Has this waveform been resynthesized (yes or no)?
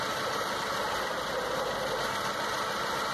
no